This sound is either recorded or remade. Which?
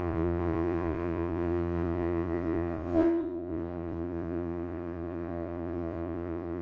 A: remade